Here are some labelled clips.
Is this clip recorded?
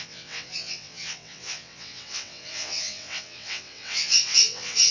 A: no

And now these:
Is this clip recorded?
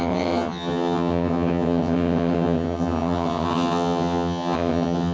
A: no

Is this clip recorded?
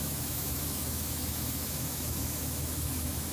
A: no